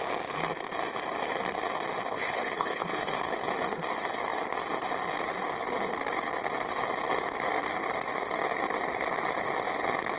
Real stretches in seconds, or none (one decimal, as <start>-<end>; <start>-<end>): 0.0-2.1; 3.1-10.2